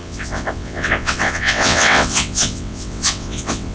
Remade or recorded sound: remade